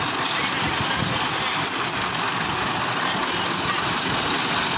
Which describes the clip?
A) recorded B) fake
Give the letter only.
A